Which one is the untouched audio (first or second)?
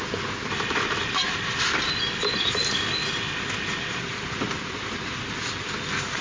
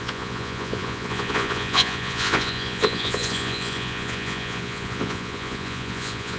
first